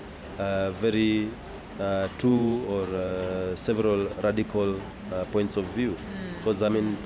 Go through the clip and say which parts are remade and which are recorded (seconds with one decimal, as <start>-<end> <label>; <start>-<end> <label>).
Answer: 0.0-2.3 recorded; 2.3-3.1 remade; 3.1-7.1 recorded